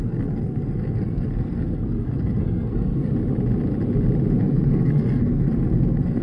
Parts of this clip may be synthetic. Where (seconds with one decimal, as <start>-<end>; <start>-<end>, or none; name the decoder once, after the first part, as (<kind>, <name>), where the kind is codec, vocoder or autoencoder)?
0.0-3.1 (codec, SNAC); 4.4-6.2